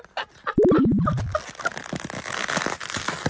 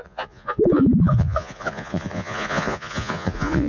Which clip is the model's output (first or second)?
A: second